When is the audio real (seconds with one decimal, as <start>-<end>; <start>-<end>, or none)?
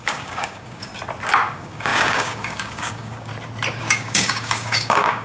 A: 0.9-1.5; 3.3-3.8